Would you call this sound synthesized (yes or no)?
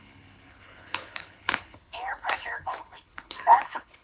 yes